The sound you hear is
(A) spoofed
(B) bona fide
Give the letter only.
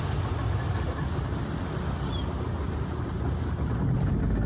B